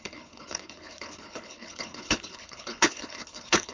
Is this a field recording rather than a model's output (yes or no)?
no